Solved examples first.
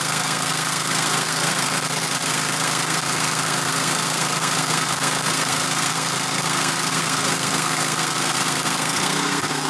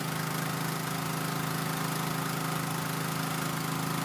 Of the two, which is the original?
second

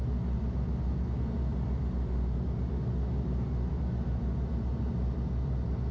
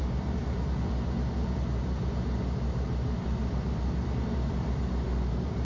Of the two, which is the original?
first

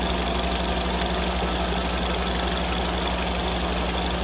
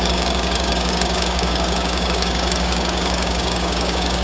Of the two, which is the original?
first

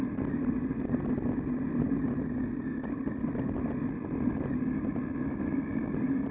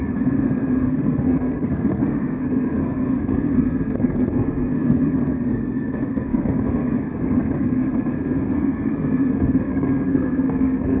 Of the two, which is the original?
first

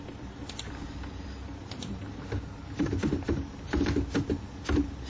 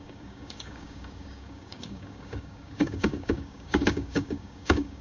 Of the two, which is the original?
first